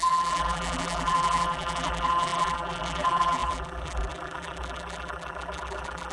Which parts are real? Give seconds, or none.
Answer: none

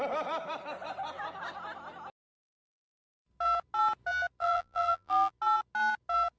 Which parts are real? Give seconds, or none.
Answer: 0.0-4.4; 5.3-6.4

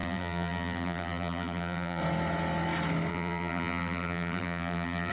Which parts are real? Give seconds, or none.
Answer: 2.0-3.1

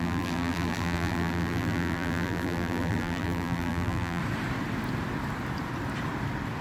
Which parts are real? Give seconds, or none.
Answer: 4.2-6.6

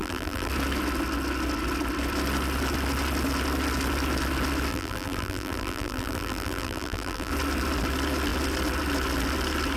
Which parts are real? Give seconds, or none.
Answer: 0.5-4.7; 7.3-9.8

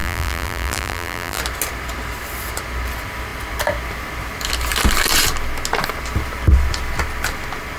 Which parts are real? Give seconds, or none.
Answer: 1.4-7.8

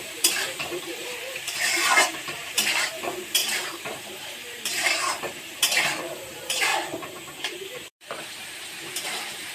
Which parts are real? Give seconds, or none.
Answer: 6.7-7.6

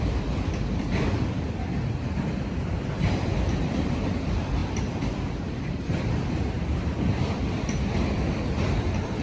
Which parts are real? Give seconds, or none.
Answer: none